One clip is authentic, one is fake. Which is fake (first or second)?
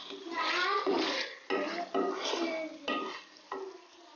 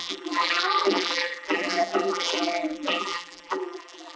second